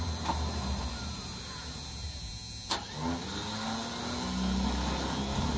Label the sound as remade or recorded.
recorded